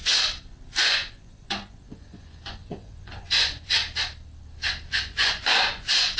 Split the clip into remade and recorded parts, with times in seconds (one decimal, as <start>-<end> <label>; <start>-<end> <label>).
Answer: 0.0-0.7 recorded; 0.7-3.8 remade; 3.8-4.9 recorded; 4.9-6.2 remade